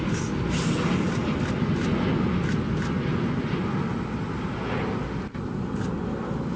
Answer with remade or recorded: recorded